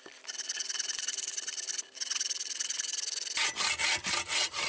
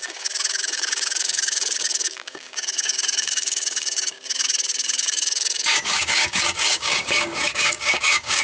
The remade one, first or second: second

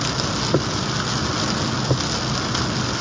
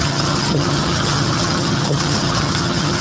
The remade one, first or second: second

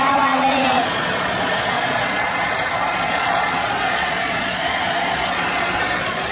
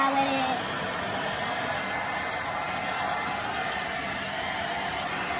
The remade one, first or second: first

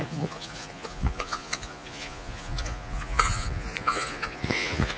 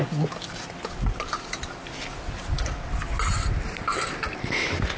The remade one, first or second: first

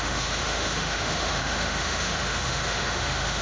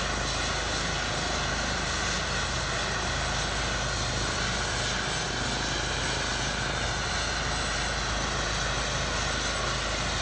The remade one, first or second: first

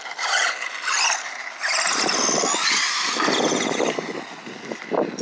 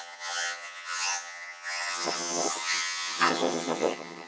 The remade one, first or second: second